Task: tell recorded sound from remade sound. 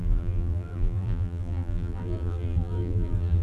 remade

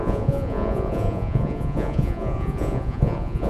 remade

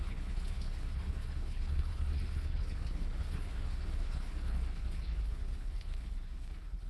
remade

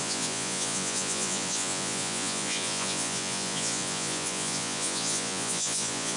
remade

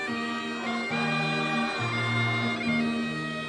recorded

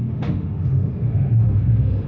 remade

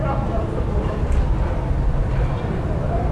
remade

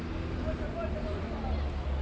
recorded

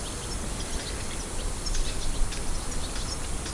recorded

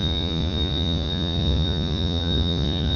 remade